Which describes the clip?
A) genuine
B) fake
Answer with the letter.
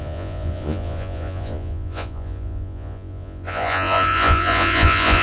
B